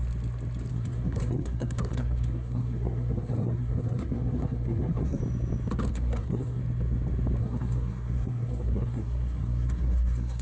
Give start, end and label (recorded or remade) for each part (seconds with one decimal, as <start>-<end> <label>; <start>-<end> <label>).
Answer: 0.0-0.7 recorded; 0.7-5.2 remade; 5.2-5.9 recorded; 5.9-6.6 remade; 6.6-7.4 recorded; 7.4-10.4 remade